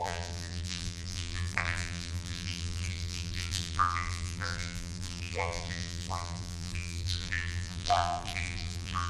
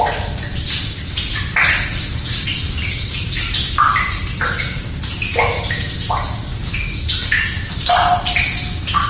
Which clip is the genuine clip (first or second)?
second